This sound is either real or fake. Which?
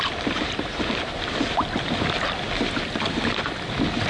real